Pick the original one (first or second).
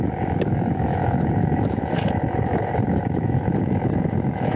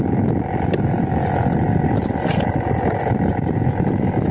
second